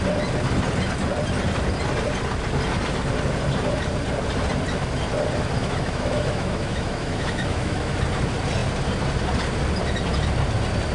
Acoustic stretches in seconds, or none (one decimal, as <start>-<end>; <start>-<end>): 0.0-5.6; 8.0-10.9